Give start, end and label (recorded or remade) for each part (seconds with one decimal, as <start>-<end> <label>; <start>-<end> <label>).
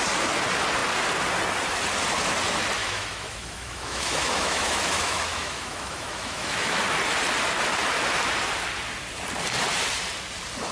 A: 0.0-2.8 recorded; 2.8-6.8 remade; 6.8-10.7 recorded